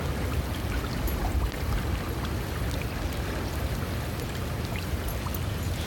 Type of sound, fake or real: real